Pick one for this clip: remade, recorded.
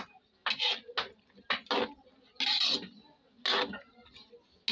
recorded